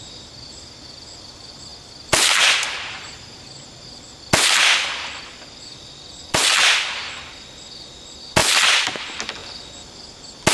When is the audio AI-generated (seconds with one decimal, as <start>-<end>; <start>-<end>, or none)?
5.7-6.5